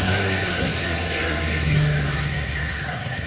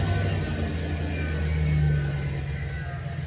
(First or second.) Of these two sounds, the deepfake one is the first